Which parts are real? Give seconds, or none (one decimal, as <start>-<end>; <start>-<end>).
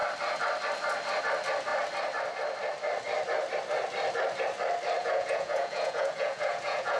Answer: 0.0-5.0